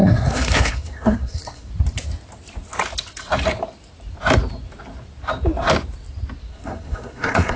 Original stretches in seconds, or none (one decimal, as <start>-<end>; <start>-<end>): 1.7-6.5